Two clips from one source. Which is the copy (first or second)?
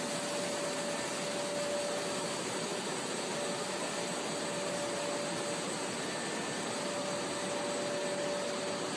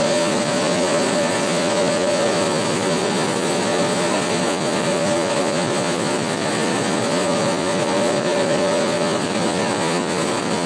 second